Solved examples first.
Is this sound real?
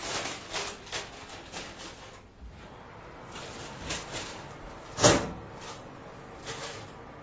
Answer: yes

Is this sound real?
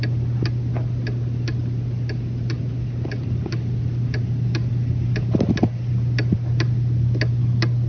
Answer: yes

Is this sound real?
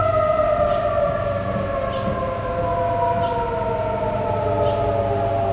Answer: yes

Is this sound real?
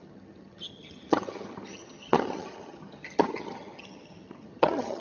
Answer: no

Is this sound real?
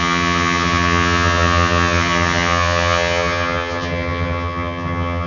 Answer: no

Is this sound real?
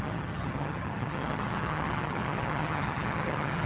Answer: no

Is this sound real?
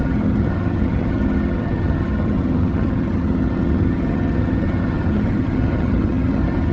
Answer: no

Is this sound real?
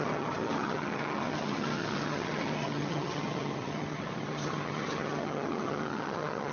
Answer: no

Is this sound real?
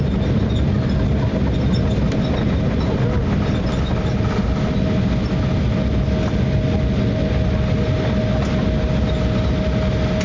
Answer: yes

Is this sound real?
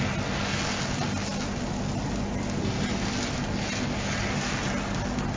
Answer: yes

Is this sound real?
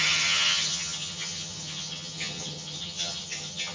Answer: no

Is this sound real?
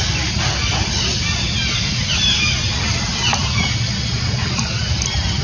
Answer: yes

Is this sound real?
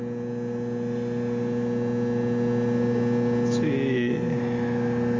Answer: yes